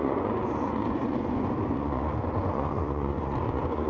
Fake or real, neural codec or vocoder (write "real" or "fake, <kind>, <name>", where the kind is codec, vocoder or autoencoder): fake, vocoder, Vocos